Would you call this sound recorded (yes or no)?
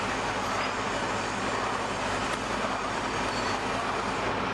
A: yes